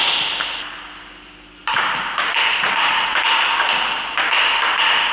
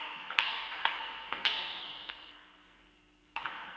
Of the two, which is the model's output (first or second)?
second